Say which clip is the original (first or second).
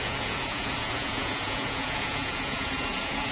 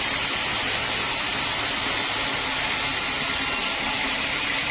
second